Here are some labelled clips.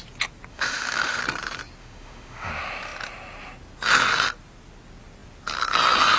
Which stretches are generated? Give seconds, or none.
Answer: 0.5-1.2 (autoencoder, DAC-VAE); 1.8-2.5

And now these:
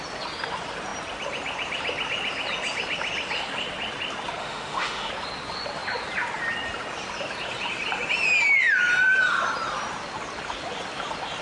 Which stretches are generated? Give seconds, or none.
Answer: 4.4-5.1 (autoencoder, DAC-VAE)

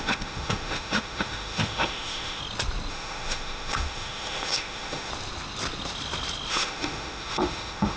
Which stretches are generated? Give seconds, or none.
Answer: 0.0-2.4 (autoencoder, DAC-VAE); 2.9-5.1; 6.5-8.0

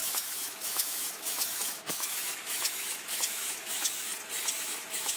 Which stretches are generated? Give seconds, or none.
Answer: 0.0-4.1 (autoencoder, DAC-VAE); 4.6-5.2

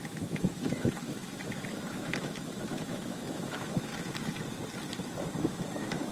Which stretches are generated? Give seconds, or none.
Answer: 0.0-3.9 (autoencoder, DAC-VAE); 5.4-6.1

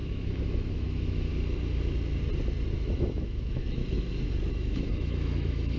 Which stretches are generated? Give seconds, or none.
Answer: 0.0-1.3 (autoencoder, DAC-VAE); 2.7-3.8; 4.5-5.8